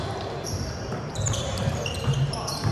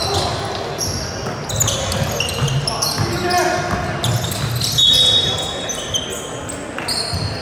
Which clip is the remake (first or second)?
first